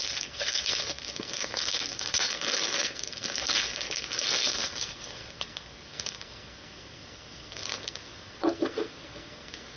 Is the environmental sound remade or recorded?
remade